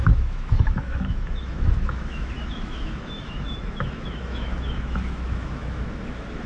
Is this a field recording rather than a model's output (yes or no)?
no